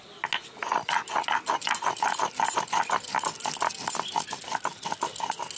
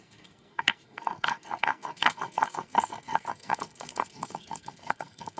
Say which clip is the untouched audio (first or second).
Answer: first